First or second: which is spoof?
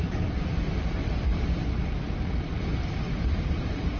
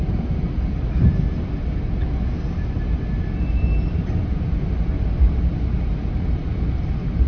first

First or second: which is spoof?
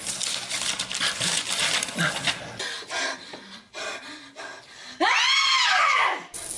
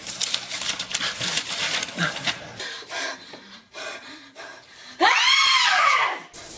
second